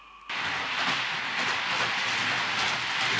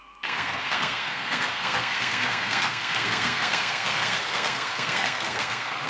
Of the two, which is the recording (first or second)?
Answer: first